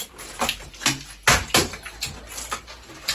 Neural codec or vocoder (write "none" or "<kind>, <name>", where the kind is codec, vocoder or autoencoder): none